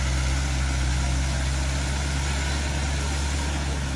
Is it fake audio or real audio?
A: real